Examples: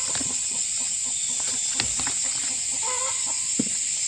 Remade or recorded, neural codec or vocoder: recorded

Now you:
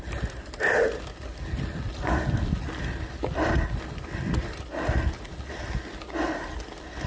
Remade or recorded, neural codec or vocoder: recorded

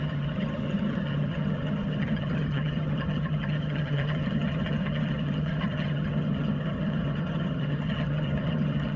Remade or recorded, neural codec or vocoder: remade, vocoder, HiFi-GAN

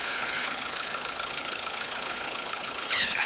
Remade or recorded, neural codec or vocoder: remade, codec, HILCodec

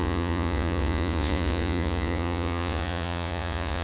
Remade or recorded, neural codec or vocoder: remade, vocoder, Vocos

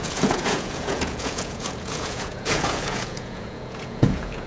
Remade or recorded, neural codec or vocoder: remade, vocoder, Vocos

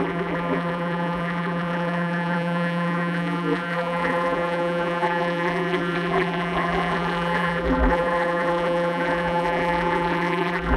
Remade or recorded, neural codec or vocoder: remade, vocoder, BigVGAN v2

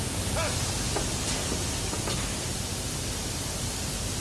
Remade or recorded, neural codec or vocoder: recorded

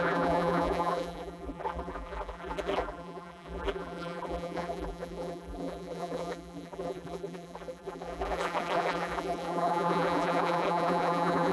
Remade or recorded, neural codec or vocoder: remade, vocoder, BigVGAN v2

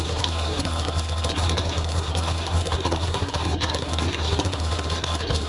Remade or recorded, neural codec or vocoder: remade, codec, SNAC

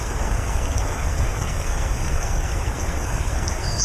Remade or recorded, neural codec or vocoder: remade, codec, SNAC